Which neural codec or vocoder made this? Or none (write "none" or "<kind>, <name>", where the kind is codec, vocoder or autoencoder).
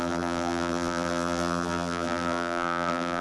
vocoder, BigVGAN v2